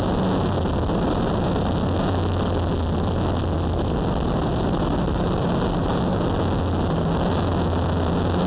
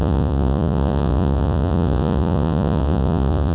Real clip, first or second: first